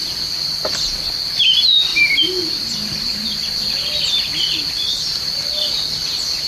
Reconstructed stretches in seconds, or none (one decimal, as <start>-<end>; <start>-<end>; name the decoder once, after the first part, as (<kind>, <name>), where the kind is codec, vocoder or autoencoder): none